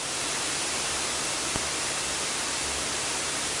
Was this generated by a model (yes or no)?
no